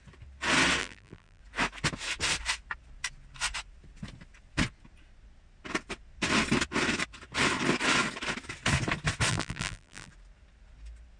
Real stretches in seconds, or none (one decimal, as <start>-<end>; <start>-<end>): 0.0-0.8; 1.4-9.3; 10.1-11.2